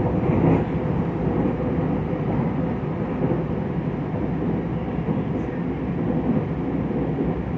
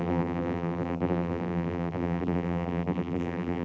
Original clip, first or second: first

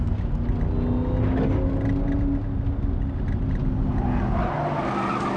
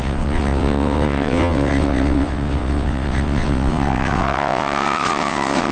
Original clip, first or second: first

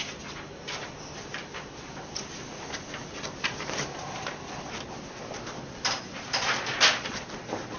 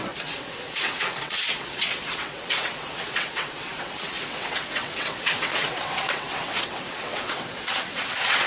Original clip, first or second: first